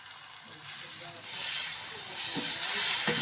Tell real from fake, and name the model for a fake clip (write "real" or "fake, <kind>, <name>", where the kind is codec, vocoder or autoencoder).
real